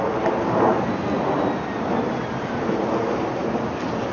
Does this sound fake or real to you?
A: real